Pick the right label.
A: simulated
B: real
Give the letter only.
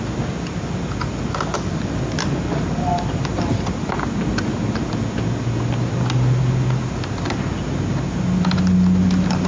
B